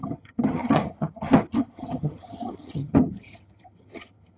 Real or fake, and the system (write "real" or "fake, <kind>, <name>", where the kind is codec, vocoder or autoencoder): fake, vocoder, HiFi-GAN